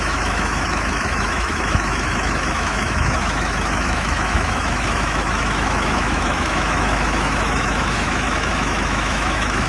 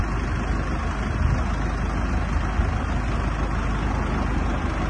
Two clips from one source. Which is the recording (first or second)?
second